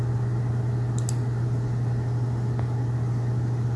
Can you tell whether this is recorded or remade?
recorded